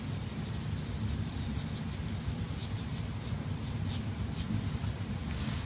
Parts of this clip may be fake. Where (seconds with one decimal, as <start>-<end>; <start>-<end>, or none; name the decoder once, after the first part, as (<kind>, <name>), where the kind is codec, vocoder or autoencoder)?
none